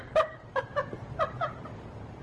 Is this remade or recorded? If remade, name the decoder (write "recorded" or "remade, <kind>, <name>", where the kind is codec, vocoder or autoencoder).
recorded